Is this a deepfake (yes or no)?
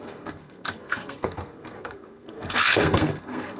yes